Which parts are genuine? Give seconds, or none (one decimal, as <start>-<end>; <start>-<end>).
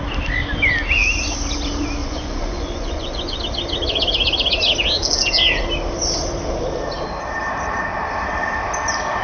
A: 0.0-2.0; 3.4-9.2